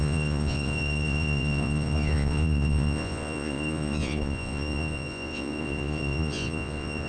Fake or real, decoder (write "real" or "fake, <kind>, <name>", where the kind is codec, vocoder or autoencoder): fake, vocoder, Vocos